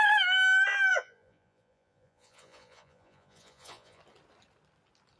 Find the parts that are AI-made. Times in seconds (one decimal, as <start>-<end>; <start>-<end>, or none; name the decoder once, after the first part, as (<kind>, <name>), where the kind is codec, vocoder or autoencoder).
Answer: 0.9-4.0 (vocoder, Vocos)